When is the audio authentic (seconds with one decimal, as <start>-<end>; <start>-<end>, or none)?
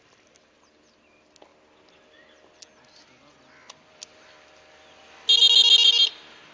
0.0-6.5